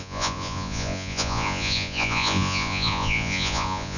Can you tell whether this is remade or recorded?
remade